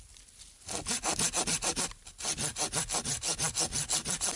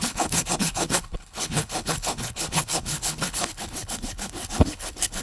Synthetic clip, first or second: second